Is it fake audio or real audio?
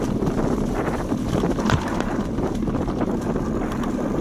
real